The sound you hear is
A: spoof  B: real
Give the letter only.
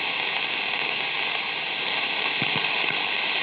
B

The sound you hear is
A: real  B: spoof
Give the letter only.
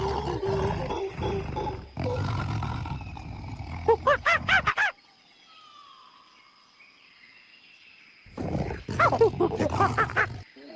A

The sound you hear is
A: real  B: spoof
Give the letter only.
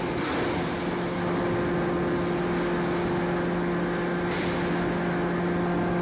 A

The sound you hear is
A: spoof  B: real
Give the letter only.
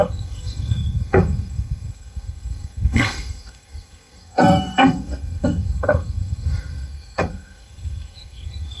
A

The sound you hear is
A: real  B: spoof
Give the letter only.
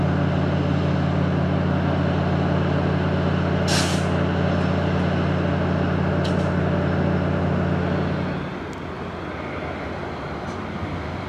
A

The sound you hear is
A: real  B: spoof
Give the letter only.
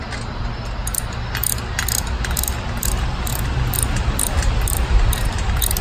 A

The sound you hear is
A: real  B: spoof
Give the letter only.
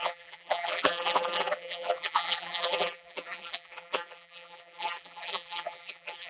B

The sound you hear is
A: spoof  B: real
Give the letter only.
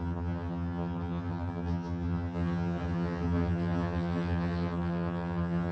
A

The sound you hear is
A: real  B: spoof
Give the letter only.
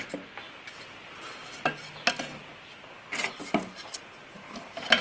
A